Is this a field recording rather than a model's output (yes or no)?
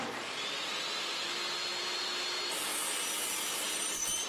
yes